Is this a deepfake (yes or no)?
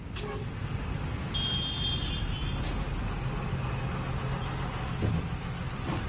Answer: no